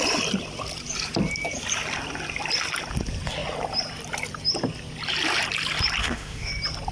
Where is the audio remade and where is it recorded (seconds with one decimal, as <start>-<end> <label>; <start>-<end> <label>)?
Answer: 0.0-6.0 recorded; 6.0-6.5 remade; 6.5-6.9 recorded

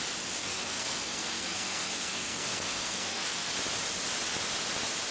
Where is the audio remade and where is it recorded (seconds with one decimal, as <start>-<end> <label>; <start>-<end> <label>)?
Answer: 0.0-0.4 recorded; 0.4-3.5 remade; 3.5-5.1 recorded

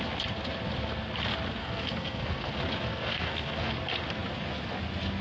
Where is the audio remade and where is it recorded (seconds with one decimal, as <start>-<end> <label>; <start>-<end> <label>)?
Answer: 0.0-1.6 recorded; 1.6-2.5 remade; 2.5-2.9 recorded; 2.9-3.7 remade; 3.7-5.2 recorded

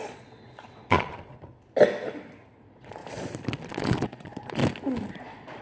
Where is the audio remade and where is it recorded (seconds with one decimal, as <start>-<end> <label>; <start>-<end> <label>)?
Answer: 0.0-1.5 remade; 1.5-2.6 recorded; 2.6-3.0 remade; 3.0-3.7 recorded; 3.7-4.6 remade; 4.6-5.1 recorded; 5.1-5.6 remade

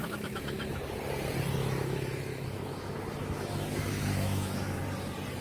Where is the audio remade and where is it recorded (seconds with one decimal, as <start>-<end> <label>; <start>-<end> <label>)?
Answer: 0.0-0.8 remade; 0.8-1.6 recorded; 1.6-4.8 remade; 4.8-5.4 recorded

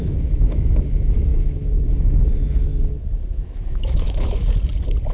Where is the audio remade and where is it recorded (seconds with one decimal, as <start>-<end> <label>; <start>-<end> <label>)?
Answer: 0.0-2.7 remade; 2.7-3.4 recorded; 3.4-4.4 remade; 4.4-5.1 recorded

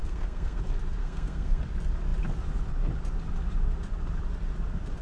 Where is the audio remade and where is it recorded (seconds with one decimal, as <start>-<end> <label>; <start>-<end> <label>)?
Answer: 0.0-0.6 remade; 0.6-1.0 recorded; 1.0-1.6 remade; 1.6-5.0 recorded

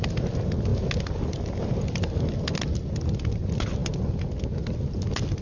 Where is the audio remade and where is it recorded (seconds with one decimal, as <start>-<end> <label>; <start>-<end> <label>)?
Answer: 0.0-5.4 recorded